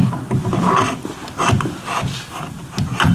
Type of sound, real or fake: fake